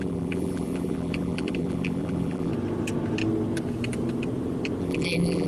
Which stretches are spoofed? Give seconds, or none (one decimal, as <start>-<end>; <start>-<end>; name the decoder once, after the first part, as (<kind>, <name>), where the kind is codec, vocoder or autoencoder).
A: 0.0-2.5 (vocoder, BigVGAN v2); 4.8-5.5